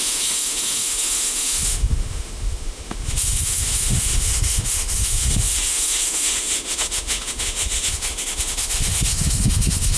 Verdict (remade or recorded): remade